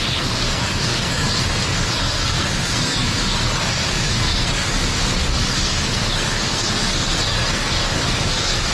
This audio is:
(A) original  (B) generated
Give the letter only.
B